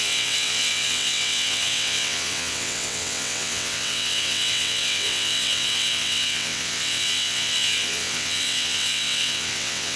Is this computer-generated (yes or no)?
yes